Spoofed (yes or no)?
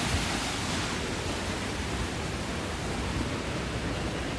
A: no